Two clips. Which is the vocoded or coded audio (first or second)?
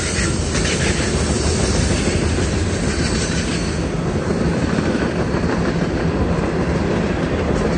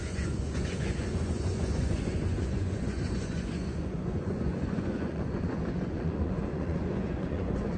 second